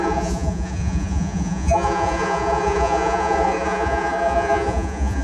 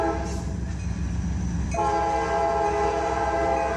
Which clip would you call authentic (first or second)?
second